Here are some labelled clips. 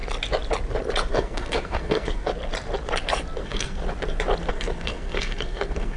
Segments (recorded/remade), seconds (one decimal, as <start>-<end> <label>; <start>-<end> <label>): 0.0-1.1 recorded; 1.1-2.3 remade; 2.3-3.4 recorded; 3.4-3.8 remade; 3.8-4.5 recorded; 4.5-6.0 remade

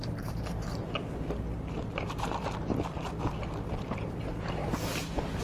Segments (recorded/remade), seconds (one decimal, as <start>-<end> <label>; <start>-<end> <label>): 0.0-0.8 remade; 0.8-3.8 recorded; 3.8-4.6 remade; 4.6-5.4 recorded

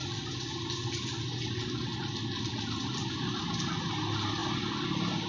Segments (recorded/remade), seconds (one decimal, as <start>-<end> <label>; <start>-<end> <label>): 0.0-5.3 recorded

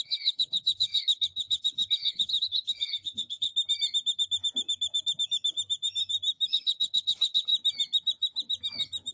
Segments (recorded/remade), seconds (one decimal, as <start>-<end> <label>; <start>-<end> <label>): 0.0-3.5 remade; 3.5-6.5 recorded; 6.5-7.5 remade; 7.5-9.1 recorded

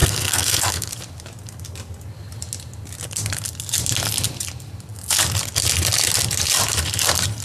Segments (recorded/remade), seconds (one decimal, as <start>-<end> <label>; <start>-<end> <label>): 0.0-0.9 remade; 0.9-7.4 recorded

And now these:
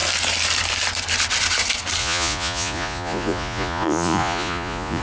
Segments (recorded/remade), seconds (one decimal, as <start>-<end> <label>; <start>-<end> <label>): 0.0-2.0 recorded; 2.0-5.0 remade

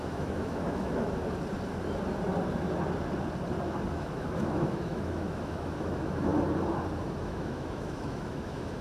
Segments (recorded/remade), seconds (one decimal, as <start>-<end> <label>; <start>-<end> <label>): 0.0-1.2 remade; 1.2-3.9 recorded; 3.9-6.3 remade; 6.3-7.2 recorded; 7.2-8.8 remade

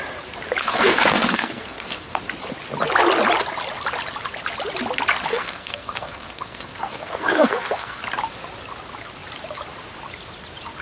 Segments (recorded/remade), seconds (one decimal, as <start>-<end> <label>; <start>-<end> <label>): 0.0-0.6 recorded; 0.6-2.2 remade; 2.2-5.3 recorded; 5.3-8.0 remade; 8.0-10.8 recorded